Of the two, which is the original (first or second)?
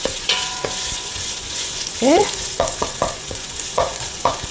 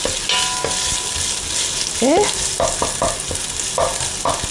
second